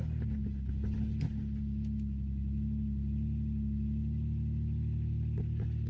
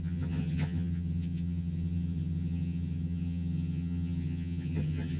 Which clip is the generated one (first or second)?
second